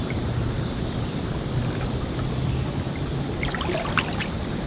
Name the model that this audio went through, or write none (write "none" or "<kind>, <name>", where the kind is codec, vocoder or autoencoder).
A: none